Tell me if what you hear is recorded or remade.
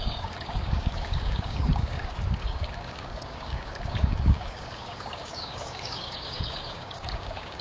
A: remade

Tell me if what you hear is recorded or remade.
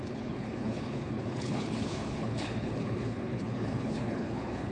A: remade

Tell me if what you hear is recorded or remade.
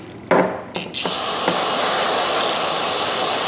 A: recorded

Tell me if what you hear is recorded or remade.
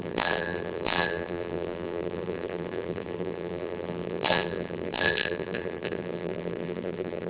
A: remade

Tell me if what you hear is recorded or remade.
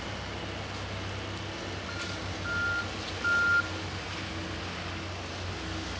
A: recorded